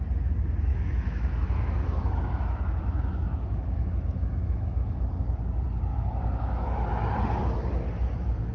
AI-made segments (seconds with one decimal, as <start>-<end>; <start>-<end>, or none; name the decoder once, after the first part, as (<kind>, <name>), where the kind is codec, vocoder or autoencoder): 0.7-5.0 (autoencoder, DAC-VAE); 5.9-6.9